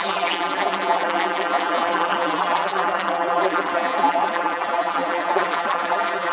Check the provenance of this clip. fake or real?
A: fake